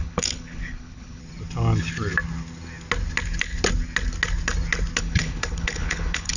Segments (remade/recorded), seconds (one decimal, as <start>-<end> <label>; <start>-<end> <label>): 0.0-1.2 remade; 1.2-5.0 recorded; 5.0-6.4 remade